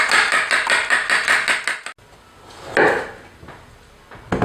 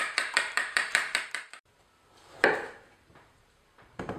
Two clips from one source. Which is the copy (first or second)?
second